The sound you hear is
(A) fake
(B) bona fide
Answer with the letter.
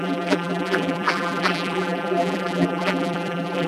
A